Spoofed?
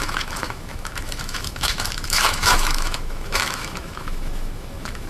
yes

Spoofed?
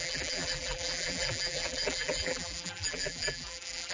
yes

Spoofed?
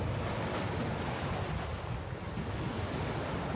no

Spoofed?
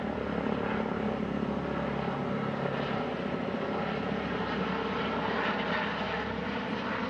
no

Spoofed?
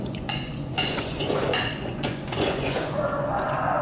yes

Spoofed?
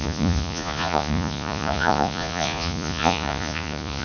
yes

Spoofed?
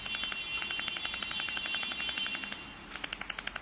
no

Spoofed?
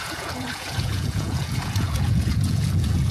yes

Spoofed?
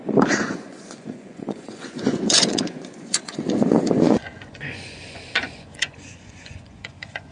yes